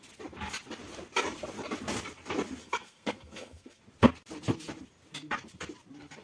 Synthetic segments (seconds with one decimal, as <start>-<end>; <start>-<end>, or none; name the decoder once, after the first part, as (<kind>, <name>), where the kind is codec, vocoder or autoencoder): 2.6-3.8 (codec, SNAC)

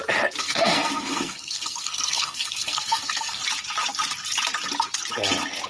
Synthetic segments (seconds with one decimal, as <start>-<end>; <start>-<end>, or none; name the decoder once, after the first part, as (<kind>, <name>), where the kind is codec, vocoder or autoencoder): 0.4-3.4 (codec, SNAC)

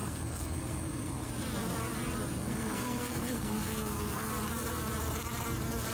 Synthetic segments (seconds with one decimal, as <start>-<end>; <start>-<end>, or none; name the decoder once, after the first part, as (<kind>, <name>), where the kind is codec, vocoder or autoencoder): 0.0-1.3 (codec, SNAC); 2.4-4.3

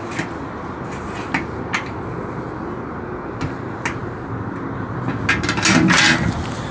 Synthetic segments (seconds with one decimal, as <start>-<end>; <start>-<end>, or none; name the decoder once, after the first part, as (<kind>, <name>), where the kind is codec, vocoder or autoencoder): none

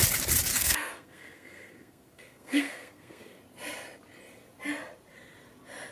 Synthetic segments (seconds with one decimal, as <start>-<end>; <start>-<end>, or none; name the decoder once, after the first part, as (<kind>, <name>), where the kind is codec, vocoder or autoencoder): 0.5-3.4 (codec, SNAC)